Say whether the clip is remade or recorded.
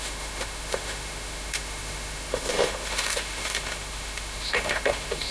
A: remade